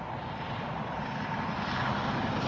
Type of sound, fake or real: real